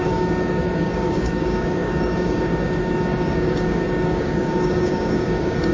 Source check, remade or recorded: remade